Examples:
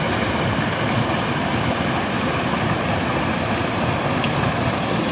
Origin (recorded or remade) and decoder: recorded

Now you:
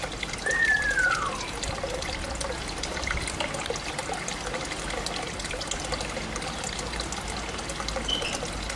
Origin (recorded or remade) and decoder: recorded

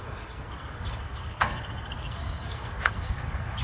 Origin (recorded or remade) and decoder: remade, codec, SNAC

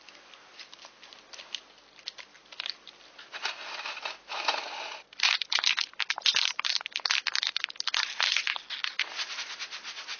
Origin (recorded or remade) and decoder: recorded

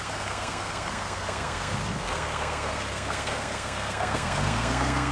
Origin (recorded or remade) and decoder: remade, codec, SNAC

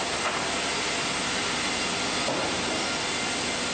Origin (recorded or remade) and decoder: recorded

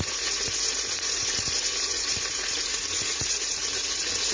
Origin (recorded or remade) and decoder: remade, vocoder, Vocos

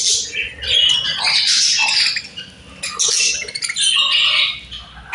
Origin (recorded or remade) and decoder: recorded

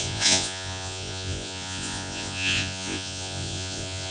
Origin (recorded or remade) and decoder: remade, vocoder, Vocos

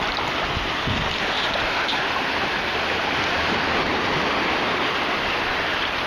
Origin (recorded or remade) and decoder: recorded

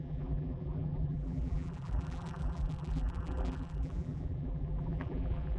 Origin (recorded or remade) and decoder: remade, vocoder, BigVGAN v2